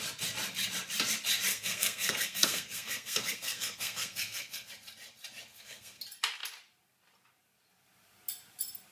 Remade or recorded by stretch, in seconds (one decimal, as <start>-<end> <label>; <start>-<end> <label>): 0.0-1.5 recorded; 1.5-4.7 remade; 4.7-5.5 recorded; 5.5-6.0 remade; 6.0-8.9 recorded